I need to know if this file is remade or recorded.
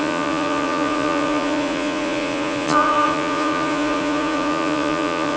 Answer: remade